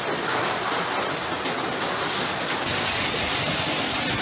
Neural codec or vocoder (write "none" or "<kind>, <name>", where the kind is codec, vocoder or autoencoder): none